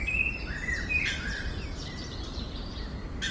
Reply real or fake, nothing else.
fake